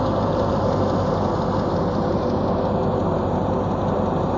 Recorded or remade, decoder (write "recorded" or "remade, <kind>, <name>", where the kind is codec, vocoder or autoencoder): recorded